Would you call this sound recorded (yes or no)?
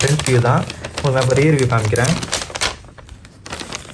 yes